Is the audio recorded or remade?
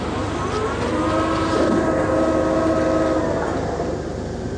recorded